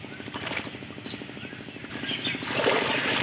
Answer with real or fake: real